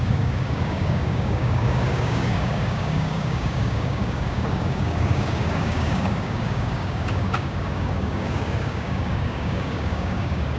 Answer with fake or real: fake